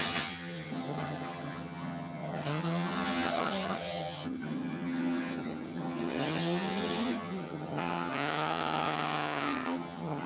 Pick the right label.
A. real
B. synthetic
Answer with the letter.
B